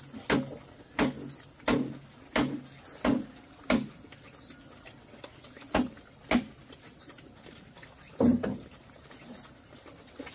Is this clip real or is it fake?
real